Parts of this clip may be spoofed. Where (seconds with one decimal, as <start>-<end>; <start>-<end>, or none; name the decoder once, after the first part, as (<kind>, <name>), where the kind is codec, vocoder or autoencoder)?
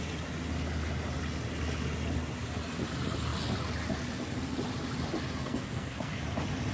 5.4-6.2 (codec, SNAC)